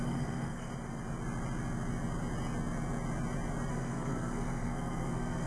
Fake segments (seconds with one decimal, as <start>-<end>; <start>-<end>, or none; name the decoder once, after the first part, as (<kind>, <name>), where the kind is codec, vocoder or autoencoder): 0.0-0.7 (codec, SNAC); 3.7-5.5